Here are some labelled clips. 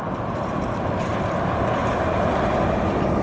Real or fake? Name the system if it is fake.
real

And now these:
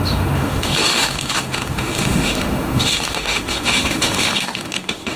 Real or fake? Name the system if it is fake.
fake, autoencoder, DAC-VAE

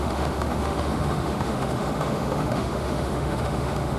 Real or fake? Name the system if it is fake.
fake, autoencoder, DAC-VAE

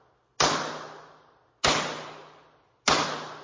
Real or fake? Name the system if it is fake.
real